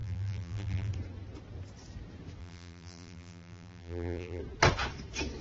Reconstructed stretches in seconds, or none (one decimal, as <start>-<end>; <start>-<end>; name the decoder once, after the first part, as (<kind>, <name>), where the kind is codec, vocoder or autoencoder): 0.0-0.9 (vocoder, BigVGAN v2); 2.4-4.4